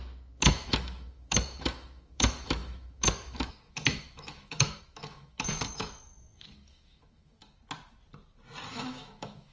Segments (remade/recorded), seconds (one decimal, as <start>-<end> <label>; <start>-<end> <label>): 0.0-7.4 remade; 7.4-8.7 recorded; 8.7-9.5 remade